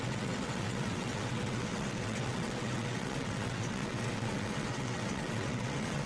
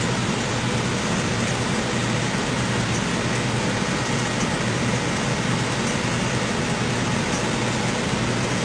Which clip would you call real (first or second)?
second